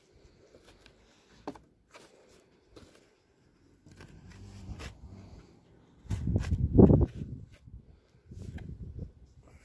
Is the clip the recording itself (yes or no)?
yes